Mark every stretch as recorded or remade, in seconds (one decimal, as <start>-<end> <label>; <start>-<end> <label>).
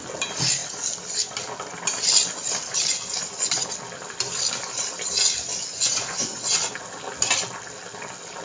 0.0-5.7 recorded; 5.7-6.6 remade; 6.6-8.4 recorded